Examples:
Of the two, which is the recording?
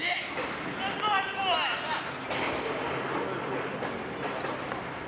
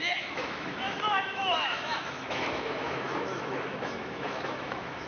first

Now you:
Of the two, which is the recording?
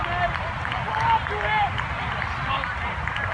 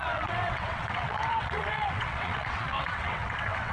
first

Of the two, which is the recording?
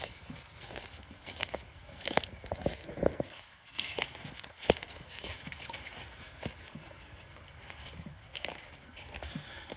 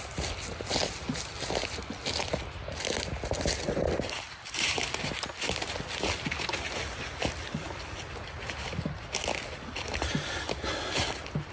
second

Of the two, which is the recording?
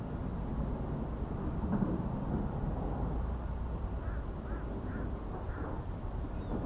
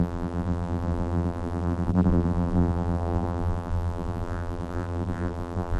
first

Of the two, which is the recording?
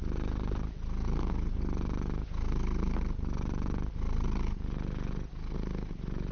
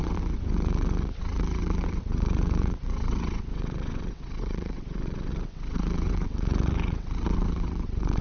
first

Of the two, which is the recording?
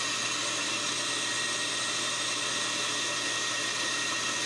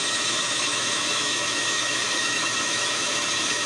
first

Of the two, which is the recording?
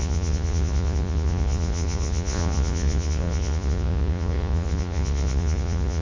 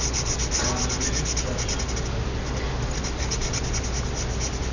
second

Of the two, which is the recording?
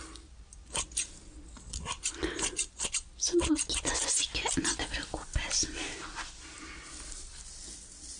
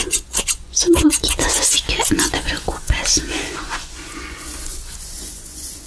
first